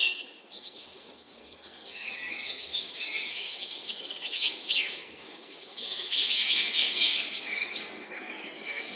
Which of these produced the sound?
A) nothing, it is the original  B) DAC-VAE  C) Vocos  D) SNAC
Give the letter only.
D